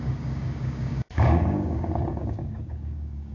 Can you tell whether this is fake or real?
fake